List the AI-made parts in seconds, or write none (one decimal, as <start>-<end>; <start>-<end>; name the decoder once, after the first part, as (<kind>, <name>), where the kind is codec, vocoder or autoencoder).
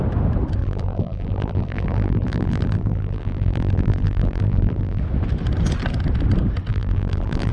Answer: 0.6-5.0 (vocoder, BigVGAN v2); 6.7-7.5